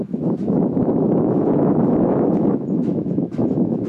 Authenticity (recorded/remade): remade